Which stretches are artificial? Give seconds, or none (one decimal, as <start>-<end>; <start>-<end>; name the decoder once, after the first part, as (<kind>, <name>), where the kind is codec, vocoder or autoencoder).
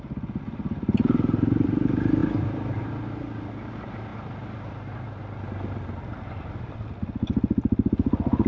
none